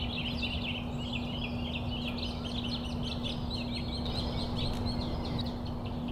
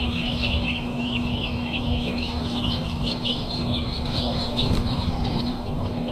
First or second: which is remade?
second